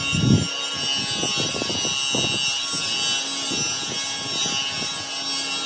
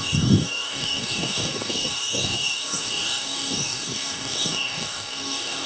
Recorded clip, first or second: first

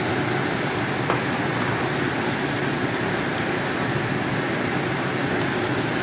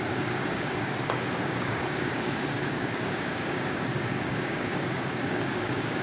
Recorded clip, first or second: first